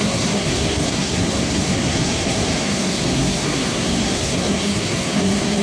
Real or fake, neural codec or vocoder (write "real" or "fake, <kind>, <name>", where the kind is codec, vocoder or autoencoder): fake, codec, SNAC